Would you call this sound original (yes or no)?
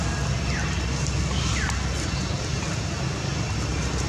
yes